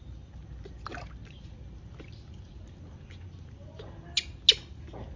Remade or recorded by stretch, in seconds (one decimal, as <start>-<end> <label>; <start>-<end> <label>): 0.0-5.2 recorded